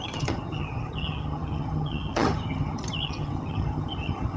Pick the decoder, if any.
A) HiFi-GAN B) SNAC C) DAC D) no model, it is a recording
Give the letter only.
A